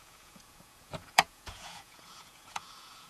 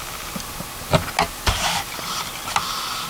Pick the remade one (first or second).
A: first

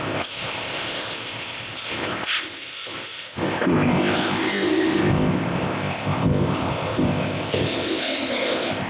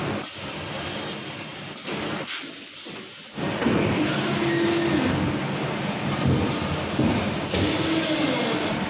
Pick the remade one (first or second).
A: first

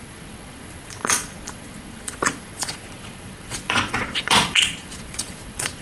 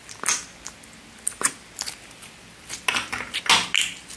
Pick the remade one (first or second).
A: first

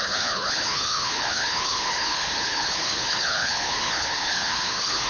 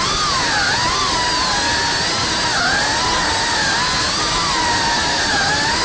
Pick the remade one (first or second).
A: first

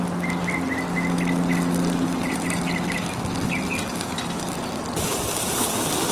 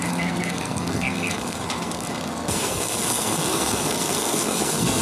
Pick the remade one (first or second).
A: second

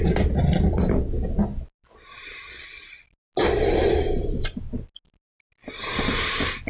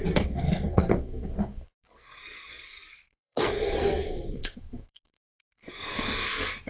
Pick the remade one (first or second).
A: second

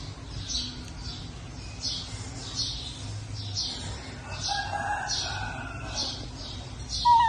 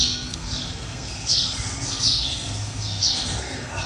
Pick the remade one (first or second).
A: second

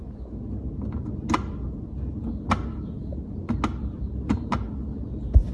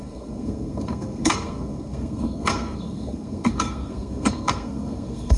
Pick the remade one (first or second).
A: second